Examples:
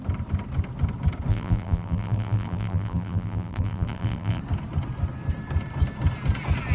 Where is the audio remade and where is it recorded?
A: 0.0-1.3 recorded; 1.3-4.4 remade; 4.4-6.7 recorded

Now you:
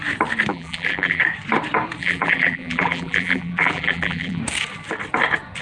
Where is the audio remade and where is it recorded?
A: 0.0-0.5 recorded; 0.5-1.2 remade; 1.2-2.0 recorded; 2.0-4.4 remade; 4.4-5.6 recorded

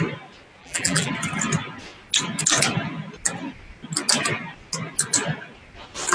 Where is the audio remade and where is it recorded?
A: 0.0-0.6 recorded; 0.6-1.1 remade; 1.1-6.1 recorded

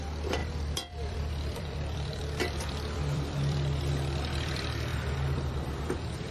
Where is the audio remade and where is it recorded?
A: 0.0-6.3 remade

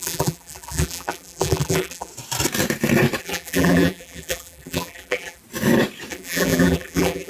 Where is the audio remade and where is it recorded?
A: 0.0-2.1 remade; 2.1-3.2 recorded; 3.2-5.4 remade; 5.4-6.1 recorded; 6.1-7.3 remade

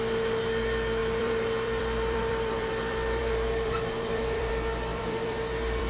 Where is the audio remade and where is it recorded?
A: 0.0-1.0 recorded; 1.0-4.5 remade; 4.5-4.9 recorded; 4.9-5.9 remade

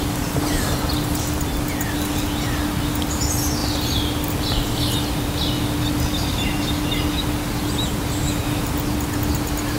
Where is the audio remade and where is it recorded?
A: 0.0-9.8 recorded